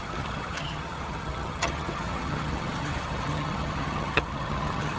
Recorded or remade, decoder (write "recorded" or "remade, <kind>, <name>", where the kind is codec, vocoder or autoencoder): remade, vocoder, HiFi-GAN